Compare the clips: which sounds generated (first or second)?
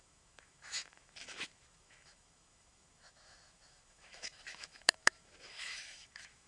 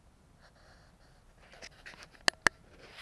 first